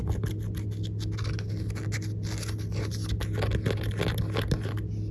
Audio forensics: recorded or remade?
recorded